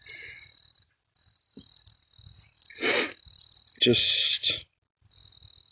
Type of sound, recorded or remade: recorded